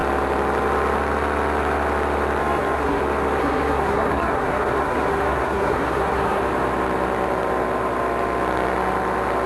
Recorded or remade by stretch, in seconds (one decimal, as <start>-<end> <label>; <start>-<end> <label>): 0.0-2.4 recorded; 2.4-3.0 remade; 3.0-3.4 recorded; 3.4-6.4 remade; 6.4-9.5 recorded